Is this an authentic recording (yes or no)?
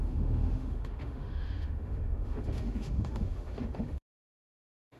no